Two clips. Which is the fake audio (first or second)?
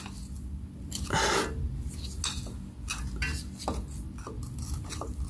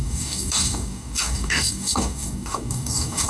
second